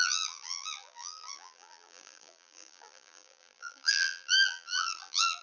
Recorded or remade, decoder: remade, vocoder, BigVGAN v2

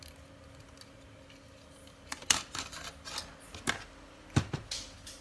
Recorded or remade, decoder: recorded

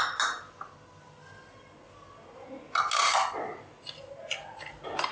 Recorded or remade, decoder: recorded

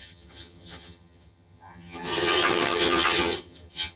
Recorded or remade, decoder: remade, vocoder, HiFi-GAN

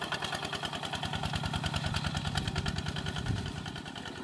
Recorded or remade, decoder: recorded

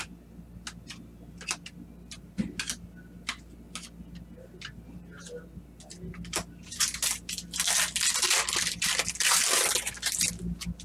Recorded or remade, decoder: recorded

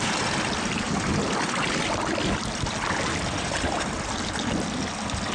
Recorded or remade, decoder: recorded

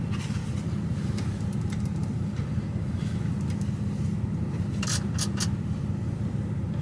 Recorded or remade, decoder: recorded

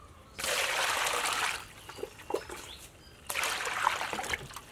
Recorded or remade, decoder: recorded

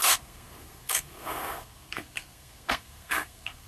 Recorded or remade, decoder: remade, codec, SNAC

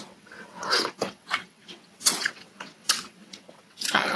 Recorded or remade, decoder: remade, vocoder, WaveNeXt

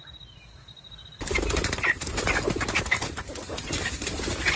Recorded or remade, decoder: recorded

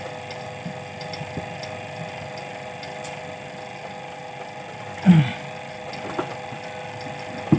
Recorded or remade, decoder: recorded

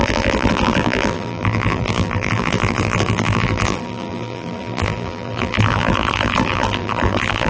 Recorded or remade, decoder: remade, vocoder, BigVGAN v2